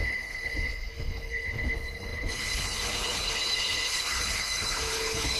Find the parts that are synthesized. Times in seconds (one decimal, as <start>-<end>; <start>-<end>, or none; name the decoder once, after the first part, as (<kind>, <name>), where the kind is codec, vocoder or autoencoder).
0.0-5.4 (codec, HILCodec)